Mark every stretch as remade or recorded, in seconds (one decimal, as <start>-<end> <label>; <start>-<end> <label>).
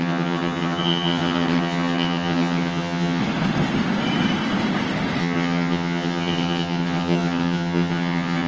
0.0-3.2 remade; 3.2-5.2 recorded; 5.2-8.5 remade